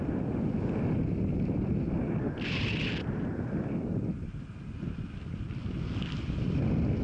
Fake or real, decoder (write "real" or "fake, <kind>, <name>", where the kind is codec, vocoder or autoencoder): real